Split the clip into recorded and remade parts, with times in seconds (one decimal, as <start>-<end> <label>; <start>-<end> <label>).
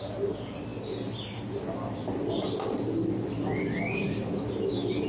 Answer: 0.0-5.1 recorded